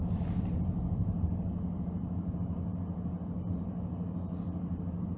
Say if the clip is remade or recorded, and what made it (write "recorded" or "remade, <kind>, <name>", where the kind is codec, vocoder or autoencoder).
recorded